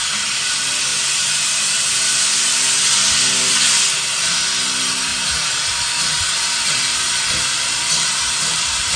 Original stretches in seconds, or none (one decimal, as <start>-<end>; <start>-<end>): 0.9-2.4; 5.1-5.9